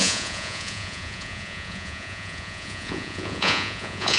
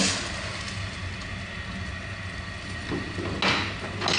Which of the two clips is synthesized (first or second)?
first